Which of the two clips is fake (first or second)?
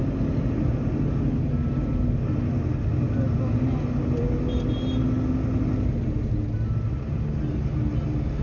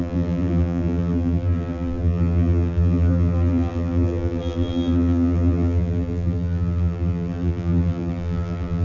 second